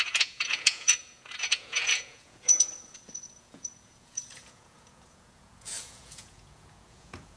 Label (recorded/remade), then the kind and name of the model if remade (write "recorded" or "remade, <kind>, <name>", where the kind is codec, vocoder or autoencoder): remade, vocoder, Vocos